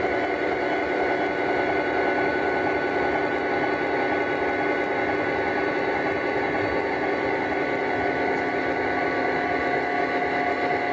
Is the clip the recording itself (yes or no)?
yes